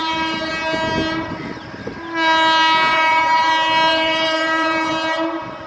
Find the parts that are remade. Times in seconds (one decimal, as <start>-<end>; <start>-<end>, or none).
0.0-0.5; 2.9-3.5; 3.9-4.9